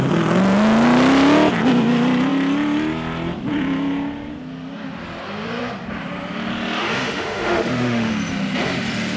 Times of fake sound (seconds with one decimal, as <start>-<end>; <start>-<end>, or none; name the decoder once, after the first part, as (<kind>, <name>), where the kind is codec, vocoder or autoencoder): 6.8-8.1 (autoencoder, DAC-VAE)